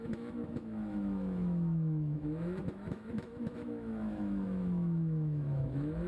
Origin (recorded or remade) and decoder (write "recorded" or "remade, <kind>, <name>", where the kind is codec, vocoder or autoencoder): remade, autoencoder, DAC-VAE